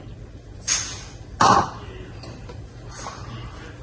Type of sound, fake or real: real